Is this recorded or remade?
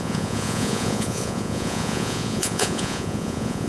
remade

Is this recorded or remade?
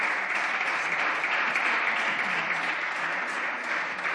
recorded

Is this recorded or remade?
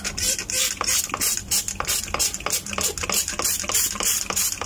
recorded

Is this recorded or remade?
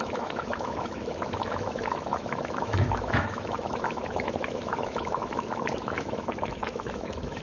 remade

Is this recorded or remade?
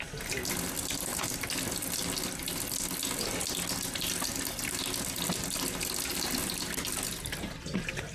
recorded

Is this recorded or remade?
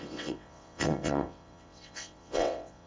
remade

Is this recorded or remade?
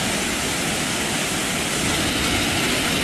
recorded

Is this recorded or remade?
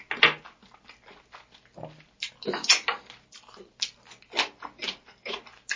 recorded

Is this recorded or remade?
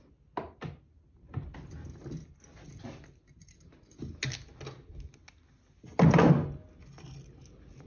recorded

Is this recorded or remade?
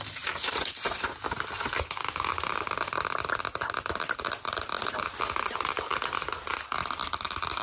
recorded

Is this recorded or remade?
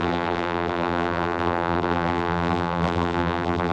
remade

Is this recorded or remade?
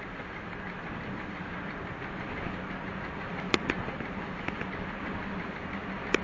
remade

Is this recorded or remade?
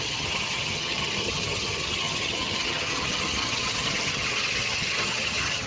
remade